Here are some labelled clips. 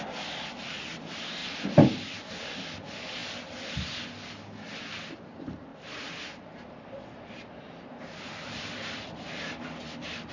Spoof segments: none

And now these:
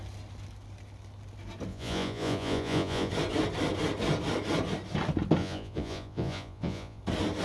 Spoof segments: 1.7-3.1 (vocoder, Vocos); 5.4-7.0

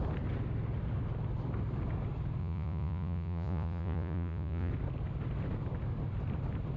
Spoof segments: 2.4-4.7 (vocoder, Vocos)

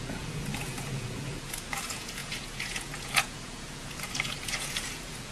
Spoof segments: 0.0-5.3 (vocoder, Vocos)